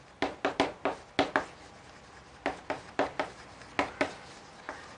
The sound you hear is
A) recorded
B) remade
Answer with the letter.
A